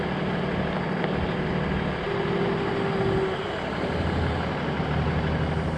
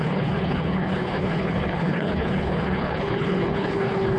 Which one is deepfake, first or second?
second